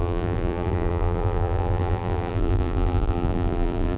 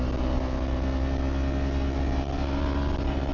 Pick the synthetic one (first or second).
first